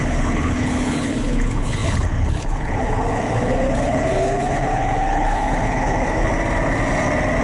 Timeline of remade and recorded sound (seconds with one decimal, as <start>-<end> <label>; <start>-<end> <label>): 0.0-6.3 remade; 6.3-7.4 recorded